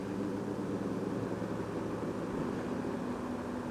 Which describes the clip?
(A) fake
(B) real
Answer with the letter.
B